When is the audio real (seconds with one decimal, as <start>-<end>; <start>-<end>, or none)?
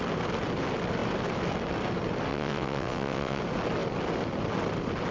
0.0-2.3; 3.4-5.1